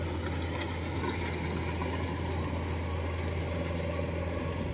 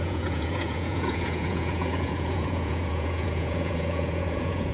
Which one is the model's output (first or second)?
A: second